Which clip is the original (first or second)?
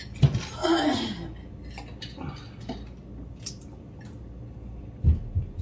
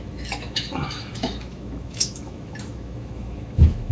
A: first